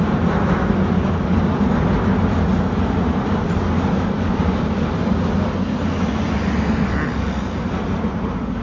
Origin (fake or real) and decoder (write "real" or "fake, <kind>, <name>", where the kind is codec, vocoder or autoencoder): real